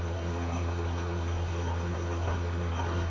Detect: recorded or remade remade